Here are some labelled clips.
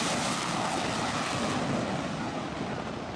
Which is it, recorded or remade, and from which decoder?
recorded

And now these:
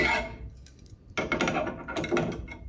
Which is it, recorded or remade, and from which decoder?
recorded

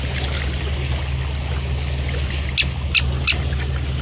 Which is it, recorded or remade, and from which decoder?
recorded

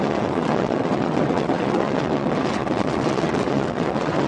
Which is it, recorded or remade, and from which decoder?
remade, vocoder, WaveNeXt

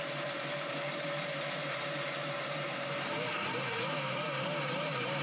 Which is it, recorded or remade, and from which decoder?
remade, vocoder, BigVGAN v2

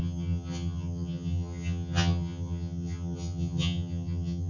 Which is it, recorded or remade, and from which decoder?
remade, vocoder, HiFi-GAN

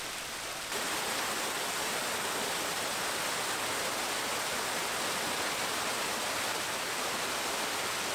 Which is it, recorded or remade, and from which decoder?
recorded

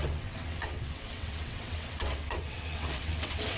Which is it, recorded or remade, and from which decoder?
remade, vocoder, WaveNeXt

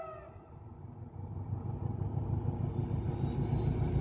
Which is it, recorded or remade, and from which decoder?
recorded